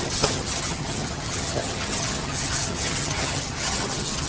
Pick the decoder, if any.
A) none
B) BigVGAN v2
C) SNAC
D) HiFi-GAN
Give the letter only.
D